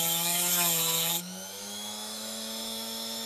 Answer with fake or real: fake